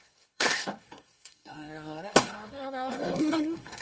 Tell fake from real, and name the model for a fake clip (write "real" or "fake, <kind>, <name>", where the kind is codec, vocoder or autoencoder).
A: fake, codec, SNAC